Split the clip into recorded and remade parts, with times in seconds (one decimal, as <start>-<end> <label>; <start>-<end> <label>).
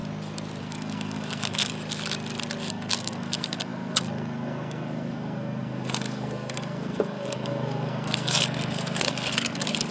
0.0-0.6 recorded; 0.6-1.7 remade; 1.7-2.7 recorded; 2.7-9.9 remade